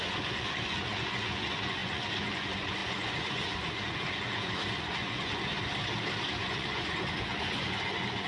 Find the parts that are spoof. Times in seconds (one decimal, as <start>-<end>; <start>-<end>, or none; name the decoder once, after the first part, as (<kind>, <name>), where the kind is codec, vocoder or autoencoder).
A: 0.0-5.5 (vocoder, Vocos); 6.4-8.3

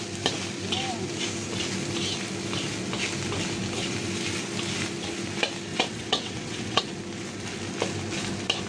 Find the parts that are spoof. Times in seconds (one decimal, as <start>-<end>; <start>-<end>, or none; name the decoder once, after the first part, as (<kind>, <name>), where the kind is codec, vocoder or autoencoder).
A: 5.7-6.8 (vocoder, WaveNeXt)

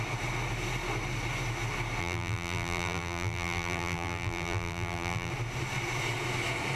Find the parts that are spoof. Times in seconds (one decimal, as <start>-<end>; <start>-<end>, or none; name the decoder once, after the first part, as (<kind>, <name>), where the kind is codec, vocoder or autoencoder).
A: 2.0-5.3 (vocoder, BigVGAN v2)

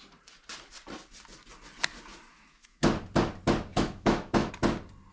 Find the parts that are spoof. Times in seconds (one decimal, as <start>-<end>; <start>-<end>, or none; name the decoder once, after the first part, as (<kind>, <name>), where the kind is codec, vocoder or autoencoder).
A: 2.3-2.9 (autoencoder, DAC-VAE); 3.7-4.5

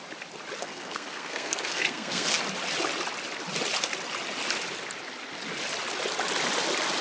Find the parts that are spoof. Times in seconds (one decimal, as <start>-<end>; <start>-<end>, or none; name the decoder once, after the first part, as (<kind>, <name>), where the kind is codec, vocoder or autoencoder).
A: 0.6-2.4 (codec, SNAC)

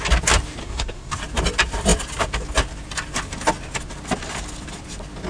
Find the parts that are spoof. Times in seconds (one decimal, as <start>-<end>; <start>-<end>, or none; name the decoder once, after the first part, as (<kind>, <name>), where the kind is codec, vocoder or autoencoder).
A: 0.6-1.1 (codec, SNAC)

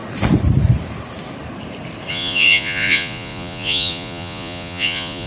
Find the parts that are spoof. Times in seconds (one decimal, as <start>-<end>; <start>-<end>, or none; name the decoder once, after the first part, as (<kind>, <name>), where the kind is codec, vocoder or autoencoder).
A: 2.1-5.3 (vocoder, Vocos)